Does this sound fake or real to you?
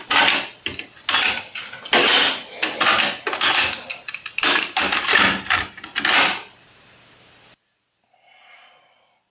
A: real